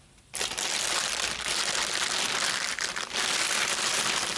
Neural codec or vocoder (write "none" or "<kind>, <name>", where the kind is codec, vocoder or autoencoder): none